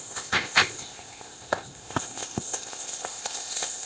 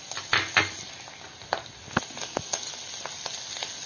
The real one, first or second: second